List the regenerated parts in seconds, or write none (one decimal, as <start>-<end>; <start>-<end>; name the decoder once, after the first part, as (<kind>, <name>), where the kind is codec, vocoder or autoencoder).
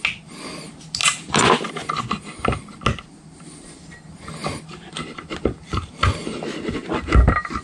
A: 1.0-1.7 (vocoder, BigVGAN v2); 4.4-4.9